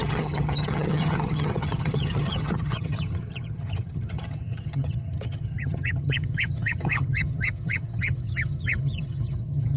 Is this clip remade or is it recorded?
remade